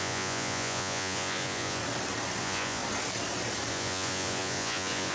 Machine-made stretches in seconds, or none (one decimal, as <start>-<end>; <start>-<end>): 0.0-1.8; 2.4-2.8; 3.7-5.1